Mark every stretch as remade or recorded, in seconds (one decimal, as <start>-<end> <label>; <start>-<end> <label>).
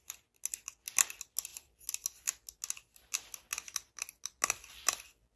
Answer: 0.0-5.4 recorded